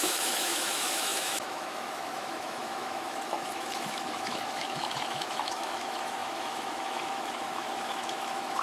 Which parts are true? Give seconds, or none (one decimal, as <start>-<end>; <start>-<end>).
none